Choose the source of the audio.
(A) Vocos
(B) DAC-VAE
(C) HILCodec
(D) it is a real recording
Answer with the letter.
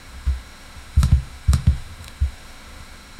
B